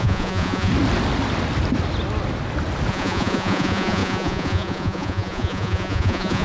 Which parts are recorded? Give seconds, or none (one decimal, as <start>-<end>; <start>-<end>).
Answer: 0.7-2.9